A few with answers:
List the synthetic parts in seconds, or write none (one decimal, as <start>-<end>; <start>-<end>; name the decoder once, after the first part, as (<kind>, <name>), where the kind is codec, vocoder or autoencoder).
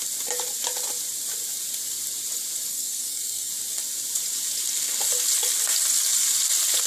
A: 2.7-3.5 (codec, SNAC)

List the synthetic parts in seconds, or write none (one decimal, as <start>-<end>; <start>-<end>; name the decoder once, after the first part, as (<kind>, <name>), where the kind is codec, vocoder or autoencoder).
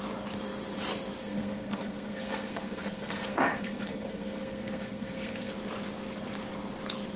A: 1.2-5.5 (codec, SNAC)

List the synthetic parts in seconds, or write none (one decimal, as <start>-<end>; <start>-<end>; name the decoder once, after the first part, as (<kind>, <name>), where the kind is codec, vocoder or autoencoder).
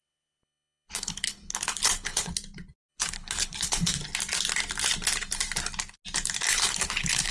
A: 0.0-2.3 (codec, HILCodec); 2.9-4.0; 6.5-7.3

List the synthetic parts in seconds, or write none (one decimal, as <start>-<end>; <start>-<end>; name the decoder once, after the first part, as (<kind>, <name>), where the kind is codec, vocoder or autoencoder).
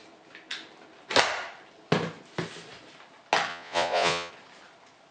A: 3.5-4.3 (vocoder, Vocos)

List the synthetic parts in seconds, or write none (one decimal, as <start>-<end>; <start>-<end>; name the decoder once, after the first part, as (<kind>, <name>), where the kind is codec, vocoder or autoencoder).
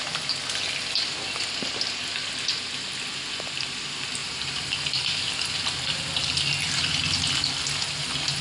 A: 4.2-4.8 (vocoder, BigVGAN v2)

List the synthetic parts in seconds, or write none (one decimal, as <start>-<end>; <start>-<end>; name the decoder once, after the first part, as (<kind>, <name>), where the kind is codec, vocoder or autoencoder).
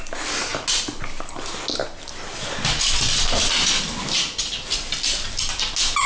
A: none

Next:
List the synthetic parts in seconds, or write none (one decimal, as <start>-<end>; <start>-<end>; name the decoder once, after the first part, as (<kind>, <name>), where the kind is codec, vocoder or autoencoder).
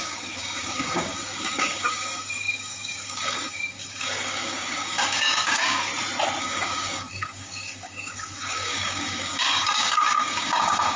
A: 0.0-5.9 (codec, DAC); 6.4-11.0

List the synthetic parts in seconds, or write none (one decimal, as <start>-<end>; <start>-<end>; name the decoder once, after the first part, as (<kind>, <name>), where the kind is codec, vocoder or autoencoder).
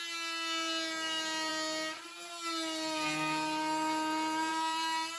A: none